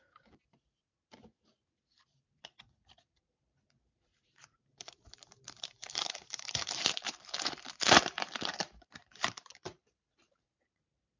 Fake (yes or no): yes